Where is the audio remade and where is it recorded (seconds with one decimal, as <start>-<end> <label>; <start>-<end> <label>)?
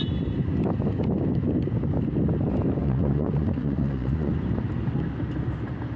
0.0-2.8 recorded; 2.8-4.3 remade; 4.3-6.0 recorded